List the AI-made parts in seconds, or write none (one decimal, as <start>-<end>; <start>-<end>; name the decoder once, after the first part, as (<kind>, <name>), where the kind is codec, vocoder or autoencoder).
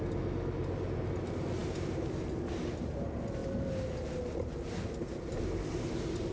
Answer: none